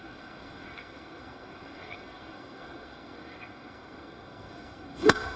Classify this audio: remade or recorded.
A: remade